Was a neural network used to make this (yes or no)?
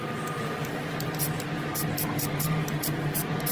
no